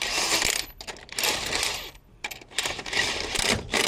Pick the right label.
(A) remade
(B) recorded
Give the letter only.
B